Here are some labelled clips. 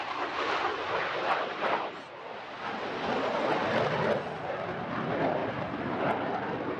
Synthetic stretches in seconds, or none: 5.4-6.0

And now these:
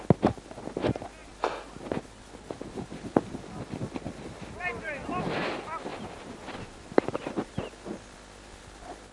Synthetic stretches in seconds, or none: 5.9-7.5

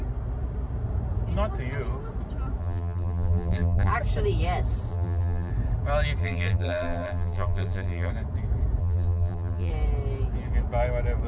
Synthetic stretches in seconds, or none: 2.6-3.9; 4.9-5.5; 6.2-8.1; 8.8-9.7

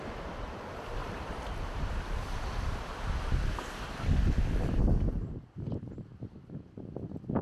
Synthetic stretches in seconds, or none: 1.0-3.2

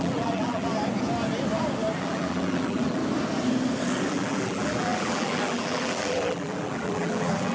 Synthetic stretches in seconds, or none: 0.0-0.7; 2.0-3.0; 4.1-7.5

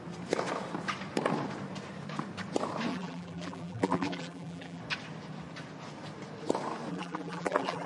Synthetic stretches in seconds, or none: 2.9-4.8; 6.9-7.9